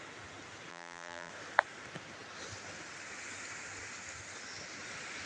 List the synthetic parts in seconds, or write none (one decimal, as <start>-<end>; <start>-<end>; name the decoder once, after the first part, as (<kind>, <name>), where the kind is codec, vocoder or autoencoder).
0.7-1.3 (vocoder, BigVGAN v2)